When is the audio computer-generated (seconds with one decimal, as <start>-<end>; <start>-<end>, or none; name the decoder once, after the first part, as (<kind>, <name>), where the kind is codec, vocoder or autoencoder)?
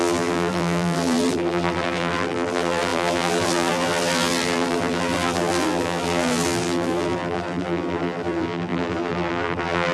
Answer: 0.0-9.9 (vocoder, BigVGAN v2)